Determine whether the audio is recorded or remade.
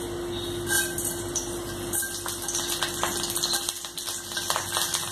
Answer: recorded